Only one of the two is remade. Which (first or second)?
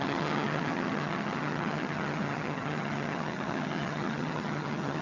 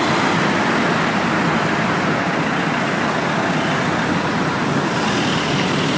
first